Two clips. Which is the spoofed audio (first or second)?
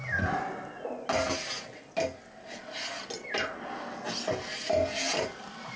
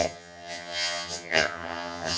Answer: second